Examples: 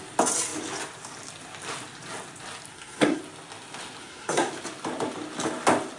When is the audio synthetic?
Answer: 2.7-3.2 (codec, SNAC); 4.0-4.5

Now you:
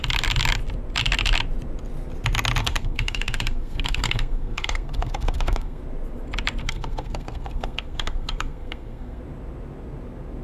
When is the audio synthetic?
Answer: 2.6-5.8 (codec, SNAC); 6.6-9.2

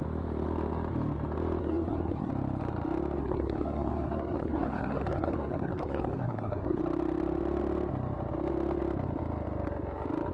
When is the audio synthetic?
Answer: 1.6-2.3 (codec, SNAC); 3.2-6.8

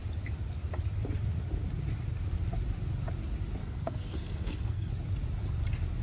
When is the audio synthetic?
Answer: 3.6-4.9 (codec, SNAC)

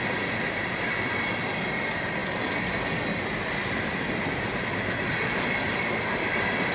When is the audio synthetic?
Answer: none

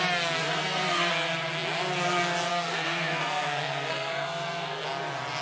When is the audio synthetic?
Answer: 0.4-1.1 (codec, SNAC); 2.5-4.8